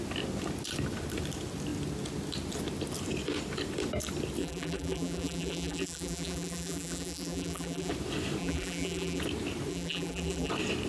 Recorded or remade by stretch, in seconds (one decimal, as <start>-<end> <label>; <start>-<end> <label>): 0.0-4.4 recorded; 4.4-7.9 remade; 7.9-8.4 recorded; 8.4-9.2 remade; 9.2-9.7 recorded; 9.7-10.5 remade; 10.5-10.9 recorded